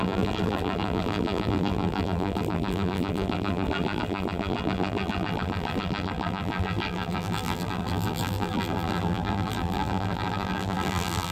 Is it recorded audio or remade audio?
remade